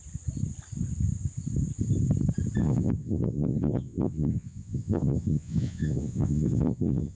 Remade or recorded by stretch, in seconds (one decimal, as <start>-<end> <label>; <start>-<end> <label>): 0.0-2.6 recorded; 2.6-7.2 remade